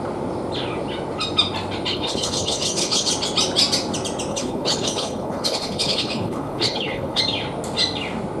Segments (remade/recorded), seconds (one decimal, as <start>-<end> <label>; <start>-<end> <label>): 0.0-1.9 recorded; 1.9-3.1 remade; 3.1-4.3 recorded; 4.3-7.2 remade; 7.2-8.4 recorded